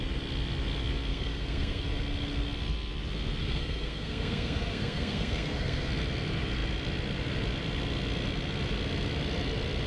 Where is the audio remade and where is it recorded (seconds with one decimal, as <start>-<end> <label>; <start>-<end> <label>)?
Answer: 0.0-1.1 recorded; 1.1-1.8 remade; 1.8-3.4 recorded; 3.4-5.9 remade; 5.9-9.9 recorded